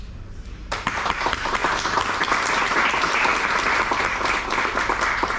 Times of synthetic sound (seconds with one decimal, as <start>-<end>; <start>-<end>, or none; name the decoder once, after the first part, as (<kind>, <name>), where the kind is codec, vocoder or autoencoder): 0.0-1.6 (vocoder, BigVGAN v2); 2.6-3.3; 4.8-5.4